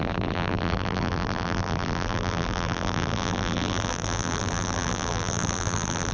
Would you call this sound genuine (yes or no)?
no